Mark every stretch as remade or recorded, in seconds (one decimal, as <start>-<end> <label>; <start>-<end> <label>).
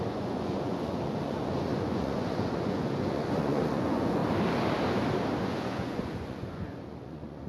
0.0-4.2 remade; 4.2-5.4 recorded; 5.4-7.5 remade